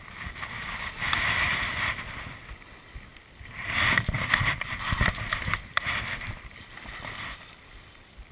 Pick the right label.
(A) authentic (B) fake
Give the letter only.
A